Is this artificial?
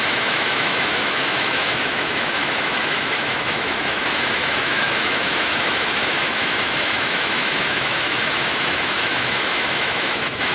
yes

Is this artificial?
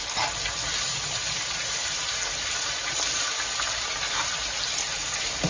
no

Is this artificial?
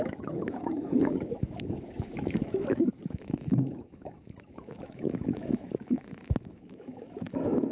yes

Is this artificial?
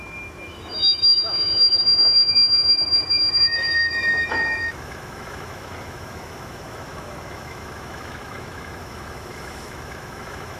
yes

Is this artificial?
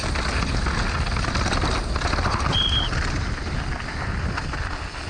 no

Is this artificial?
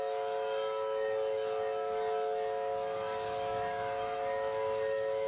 yes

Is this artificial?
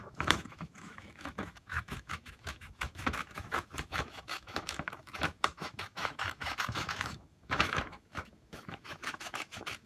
yes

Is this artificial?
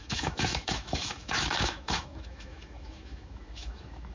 yes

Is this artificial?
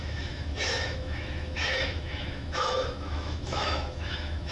yes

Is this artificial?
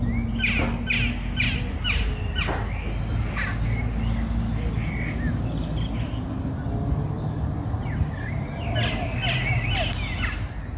no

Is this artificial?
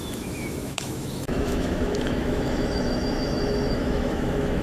yes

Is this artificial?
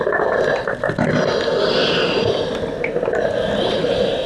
no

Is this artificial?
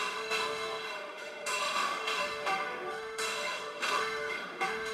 yes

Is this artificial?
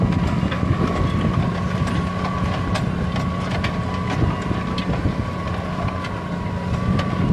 no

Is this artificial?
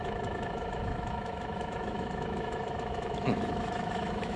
yes